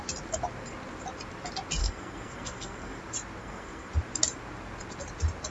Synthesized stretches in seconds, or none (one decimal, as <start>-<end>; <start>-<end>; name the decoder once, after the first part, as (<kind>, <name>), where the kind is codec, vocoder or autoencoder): 1.8-3.0 (codec, SNAC); 3.4-3.9

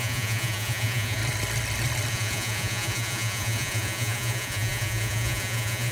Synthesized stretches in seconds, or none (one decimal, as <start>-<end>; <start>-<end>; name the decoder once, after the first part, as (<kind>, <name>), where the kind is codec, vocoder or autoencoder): 0.0-1.2 (vocoder, Vocos); 2.1-5.9